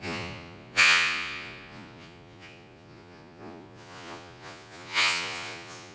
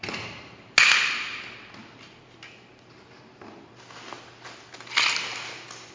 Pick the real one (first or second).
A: second